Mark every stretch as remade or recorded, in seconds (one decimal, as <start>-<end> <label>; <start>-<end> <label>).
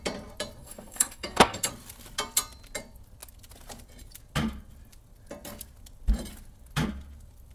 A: 0.0-0.6 recorded; 0.6-1.7 remade; 1.7-7.5 recorded